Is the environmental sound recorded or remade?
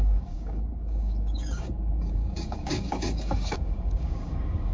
remade